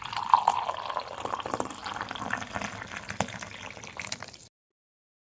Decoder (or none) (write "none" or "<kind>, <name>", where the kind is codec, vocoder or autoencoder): none